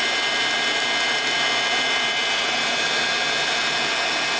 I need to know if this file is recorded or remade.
recorded